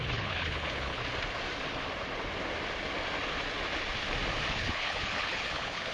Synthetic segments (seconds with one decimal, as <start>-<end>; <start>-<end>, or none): 0.0-1.0; 4.5-5.9